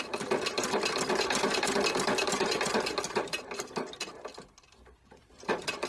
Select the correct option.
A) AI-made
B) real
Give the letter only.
B